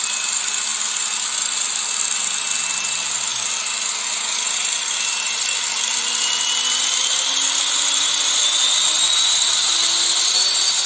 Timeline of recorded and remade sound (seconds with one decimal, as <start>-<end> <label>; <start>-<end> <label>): 0.0-10.9 recorded